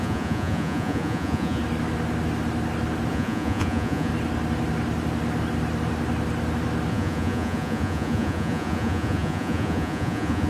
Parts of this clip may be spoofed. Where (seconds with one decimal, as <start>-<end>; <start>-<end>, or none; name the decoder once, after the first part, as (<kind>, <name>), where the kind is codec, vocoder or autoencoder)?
0.0-1.6 (vocoder, Vocos); 3.1-4.1; 6.9-10.5